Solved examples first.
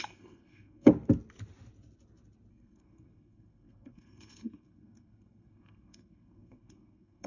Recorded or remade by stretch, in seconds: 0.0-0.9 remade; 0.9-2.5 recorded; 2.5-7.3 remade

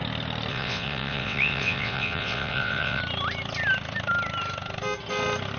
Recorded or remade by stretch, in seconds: 0.0-0.5 recorded; 0.5-3.0 remade; 3.0-5.6 recorded

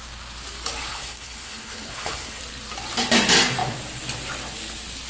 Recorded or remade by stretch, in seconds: 0.0-0.9 recorded; 0.9-2.4 remade; 2.4-5.1 recorded

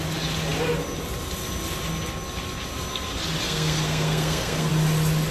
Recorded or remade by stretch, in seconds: 0.0-3.4 recorded; 3.4-4.7 remade; 4.7-5.3 recorded